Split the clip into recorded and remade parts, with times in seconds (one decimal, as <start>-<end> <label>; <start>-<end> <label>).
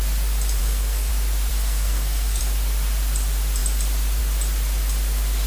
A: 0.0-0.6 recorded; 0.6-1.1 remade; 1.1-1.5 recorded; 1.5-2.4 remade; 2.4-5.5 recorded